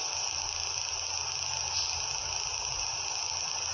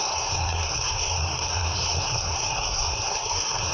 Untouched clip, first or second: first